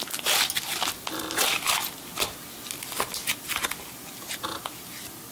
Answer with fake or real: real